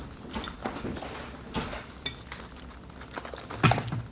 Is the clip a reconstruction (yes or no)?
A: no